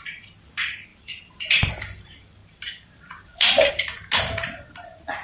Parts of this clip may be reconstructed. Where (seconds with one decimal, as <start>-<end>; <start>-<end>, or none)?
0.9-1.7; 2.4-3.7